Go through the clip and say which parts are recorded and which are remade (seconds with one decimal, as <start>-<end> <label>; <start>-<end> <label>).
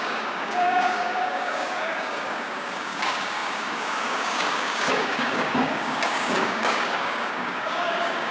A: 0.0-8.3 remade